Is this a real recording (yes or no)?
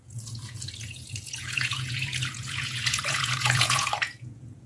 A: no